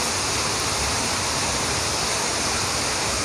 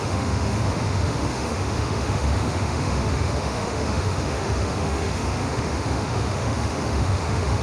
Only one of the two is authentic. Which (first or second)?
first